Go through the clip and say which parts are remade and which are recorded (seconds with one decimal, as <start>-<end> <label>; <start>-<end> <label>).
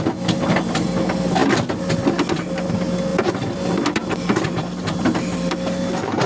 0.0-3.1 recorded; 3.1-4.1 remade; 4.1-6.3 recorded